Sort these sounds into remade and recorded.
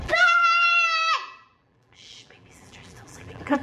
remade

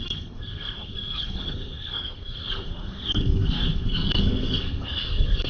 remade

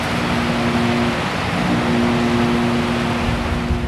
recorded